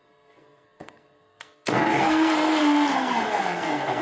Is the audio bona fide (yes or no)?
no